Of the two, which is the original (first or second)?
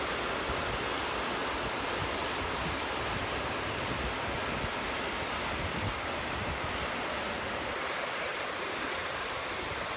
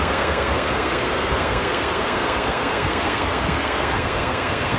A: first